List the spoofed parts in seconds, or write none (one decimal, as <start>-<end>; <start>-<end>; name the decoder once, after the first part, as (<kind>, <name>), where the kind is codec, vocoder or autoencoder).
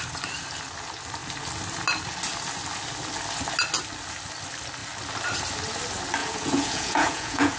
6.2-7.6 (vocoder, Vocos)